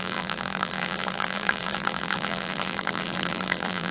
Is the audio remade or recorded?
remade